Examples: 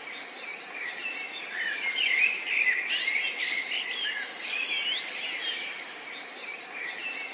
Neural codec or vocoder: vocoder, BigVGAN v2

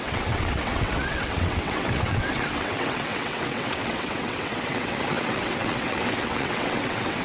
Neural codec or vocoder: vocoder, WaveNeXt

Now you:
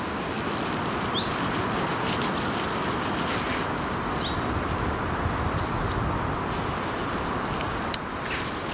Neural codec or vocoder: none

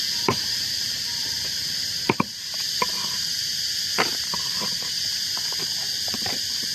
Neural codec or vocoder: vocoder, BigVGAN v2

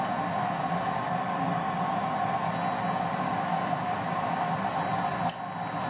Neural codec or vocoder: none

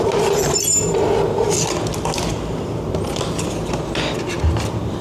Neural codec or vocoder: none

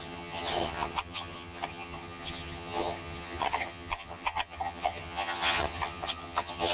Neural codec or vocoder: vocoder, HiFi-GAN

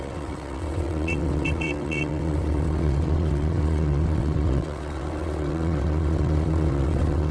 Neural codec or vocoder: vocoder, WaveNeXt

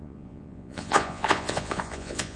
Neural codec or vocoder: vocoder, Vocos